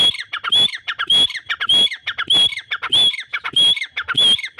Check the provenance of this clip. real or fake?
real